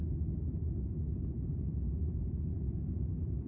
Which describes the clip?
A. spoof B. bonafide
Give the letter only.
A